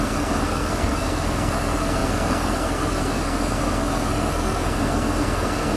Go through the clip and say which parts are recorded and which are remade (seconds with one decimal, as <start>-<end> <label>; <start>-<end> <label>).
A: 0.0-5.8 remade

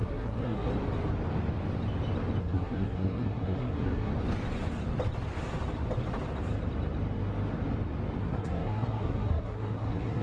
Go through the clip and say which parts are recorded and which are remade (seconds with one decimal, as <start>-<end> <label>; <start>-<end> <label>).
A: 0.0-0.7 remade; 0.7-2.4 recorded; 2.4-4.1 remade; 4.1-8.2 recorded; 8.2-10.2 remade

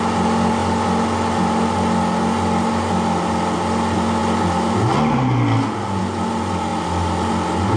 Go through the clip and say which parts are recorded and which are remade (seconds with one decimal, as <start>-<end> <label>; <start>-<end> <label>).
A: 0.0-7.8 recorded

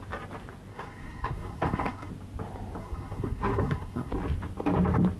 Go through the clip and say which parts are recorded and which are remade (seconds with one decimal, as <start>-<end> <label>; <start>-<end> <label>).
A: 0.0-0.7 recorded; 0.7-2.1 remade; 2.1-2.8 recorded; 2.8-4.1 remade; 4.1-5.2 recorded

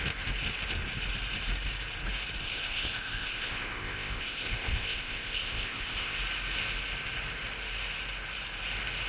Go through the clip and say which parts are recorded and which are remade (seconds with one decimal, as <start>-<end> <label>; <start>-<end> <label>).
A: 0.0-2.4 recorded; 2.4-6.2 remade; 6.2-9.1 recorded